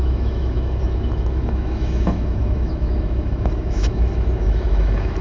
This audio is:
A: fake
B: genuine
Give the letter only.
A